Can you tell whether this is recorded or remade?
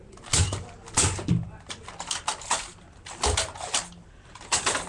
recorded